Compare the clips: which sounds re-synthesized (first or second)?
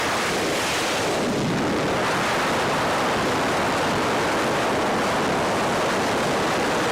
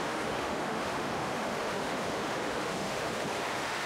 second